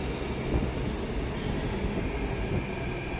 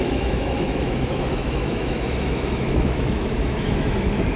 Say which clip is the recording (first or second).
first